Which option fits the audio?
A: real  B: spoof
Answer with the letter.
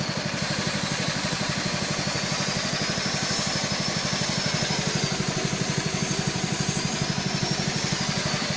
B